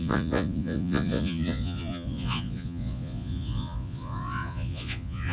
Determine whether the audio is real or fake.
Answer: fake